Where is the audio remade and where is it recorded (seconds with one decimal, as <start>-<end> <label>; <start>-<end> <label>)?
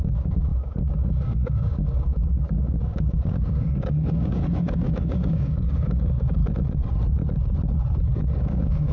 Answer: 0.0-6.4 remade; 6.4-8.4 recorded; 8.4-8.9 remade